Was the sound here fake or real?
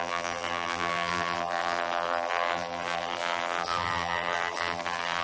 fake